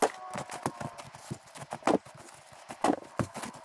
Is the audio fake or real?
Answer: real